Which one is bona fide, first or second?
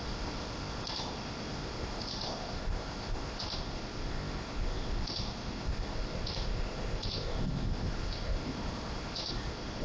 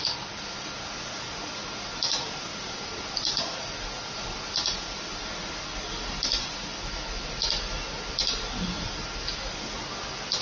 second